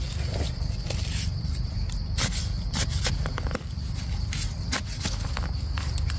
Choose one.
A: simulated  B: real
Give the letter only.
B